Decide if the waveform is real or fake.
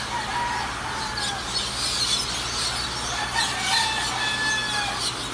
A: real